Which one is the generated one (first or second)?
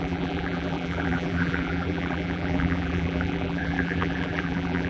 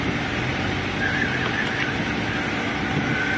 first